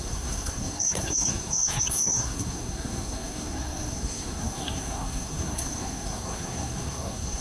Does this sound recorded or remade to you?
remade